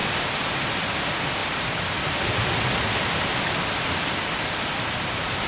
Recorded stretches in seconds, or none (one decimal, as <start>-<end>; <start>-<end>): 0.9-5.5